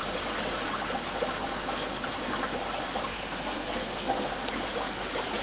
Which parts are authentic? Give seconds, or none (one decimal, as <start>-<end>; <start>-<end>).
0.0-3.1; 4.3-5.4